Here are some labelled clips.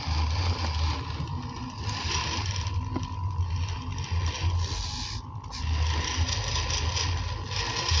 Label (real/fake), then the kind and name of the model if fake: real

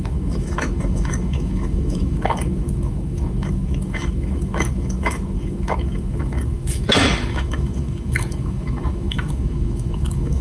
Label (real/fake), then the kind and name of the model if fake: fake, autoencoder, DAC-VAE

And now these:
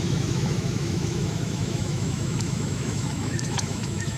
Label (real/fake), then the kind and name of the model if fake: fake, autoencoder, DAC-VAE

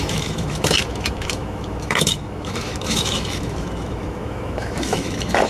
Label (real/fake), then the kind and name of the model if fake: fake, autoencoder, DAC-VAE